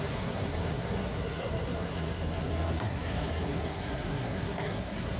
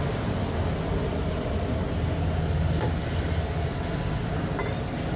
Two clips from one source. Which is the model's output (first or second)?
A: first